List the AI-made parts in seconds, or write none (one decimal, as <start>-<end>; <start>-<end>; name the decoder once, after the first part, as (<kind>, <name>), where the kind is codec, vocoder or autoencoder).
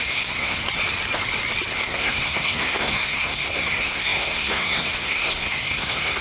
0.0-0.6 (codec, SNAC); 1.8-6.2